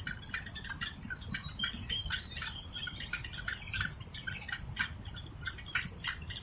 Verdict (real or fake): real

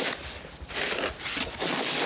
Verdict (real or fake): real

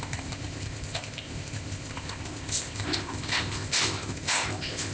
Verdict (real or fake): fake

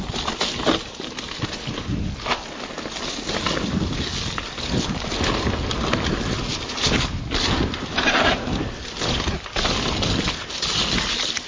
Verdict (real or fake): real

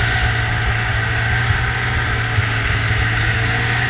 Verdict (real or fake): real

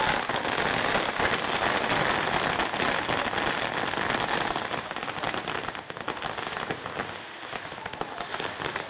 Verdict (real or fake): real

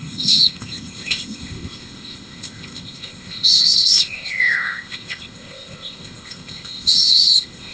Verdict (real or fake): fake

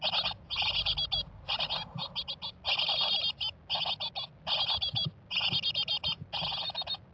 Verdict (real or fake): real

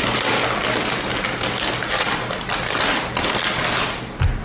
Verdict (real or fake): real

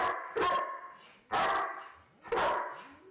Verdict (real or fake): real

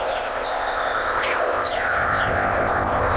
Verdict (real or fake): fake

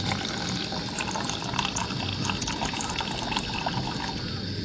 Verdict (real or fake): real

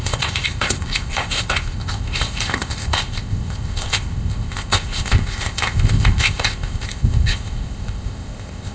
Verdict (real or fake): fake